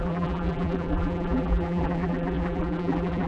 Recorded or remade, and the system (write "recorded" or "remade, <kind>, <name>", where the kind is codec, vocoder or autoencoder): remade, vocoder, BigVGAN v2